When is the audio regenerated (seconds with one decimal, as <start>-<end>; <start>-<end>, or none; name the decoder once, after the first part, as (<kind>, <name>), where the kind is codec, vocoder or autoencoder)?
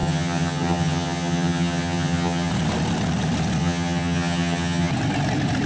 0.0-2.5 (vocoder, HiFi-GAN); 3.6-4.9